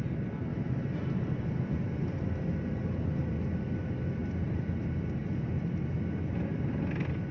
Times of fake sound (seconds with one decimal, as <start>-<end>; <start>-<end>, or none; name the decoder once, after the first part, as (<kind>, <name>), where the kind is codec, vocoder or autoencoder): 0.5-1.4 (vocoder, BigVGAN v2); 4.2-4.7